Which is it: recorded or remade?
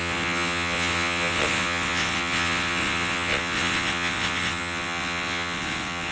remade